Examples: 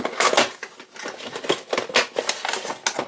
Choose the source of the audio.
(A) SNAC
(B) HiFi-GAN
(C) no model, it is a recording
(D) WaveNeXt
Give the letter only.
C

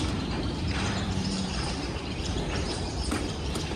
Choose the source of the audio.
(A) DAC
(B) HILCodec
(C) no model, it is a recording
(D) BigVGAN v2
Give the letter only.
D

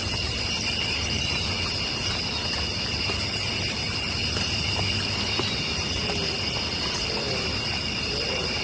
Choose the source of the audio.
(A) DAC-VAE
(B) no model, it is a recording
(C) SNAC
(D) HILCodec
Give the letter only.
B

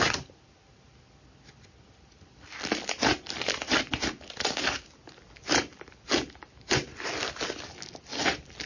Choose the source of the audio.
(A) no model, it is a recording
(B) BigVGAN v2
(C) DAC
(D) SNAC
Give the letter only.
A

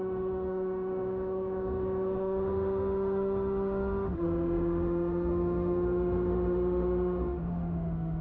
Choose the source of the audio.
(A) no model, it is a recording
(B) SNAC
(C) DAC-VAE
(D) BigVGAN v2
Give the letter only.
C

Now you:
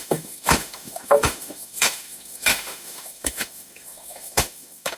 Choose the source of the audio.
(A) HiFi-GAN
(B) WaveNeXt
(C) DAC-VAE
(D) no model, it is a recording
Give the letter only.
C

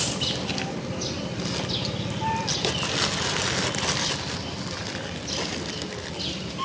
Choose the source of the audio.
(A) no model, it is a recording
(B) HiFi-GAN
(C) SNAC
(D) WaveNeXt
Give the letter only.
A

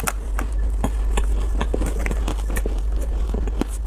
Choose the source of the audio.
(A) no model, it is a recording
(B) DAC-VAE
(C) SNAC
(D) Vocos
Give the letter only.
A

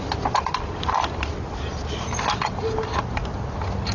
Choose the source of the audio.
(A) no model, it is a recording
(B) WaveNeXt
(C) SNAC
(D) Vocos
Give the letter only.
A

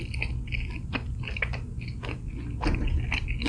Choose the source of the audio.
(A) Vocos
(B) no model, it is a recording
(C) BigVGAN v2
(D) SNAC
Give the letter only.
B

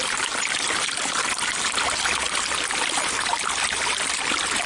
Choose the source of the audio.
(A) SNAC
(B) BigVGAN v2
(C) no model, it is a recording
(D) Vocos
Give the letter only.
C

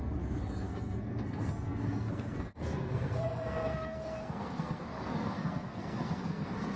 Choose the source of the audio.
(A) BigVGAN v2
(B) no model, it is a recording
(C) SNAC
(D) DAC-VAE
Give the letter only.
C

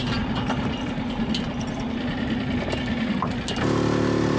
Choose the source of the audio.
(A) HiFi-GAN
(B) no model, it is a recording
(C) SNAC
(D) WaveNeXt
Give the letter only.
B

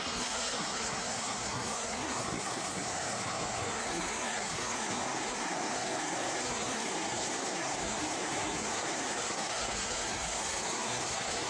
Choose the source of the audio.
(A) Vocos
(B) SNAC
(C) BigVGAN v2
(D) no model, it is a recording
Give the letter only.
B